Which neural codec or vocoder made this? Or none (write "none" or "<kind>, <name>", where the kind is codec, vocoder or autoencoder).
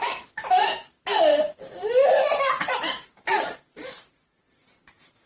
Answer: vocoder, BigVGAN v2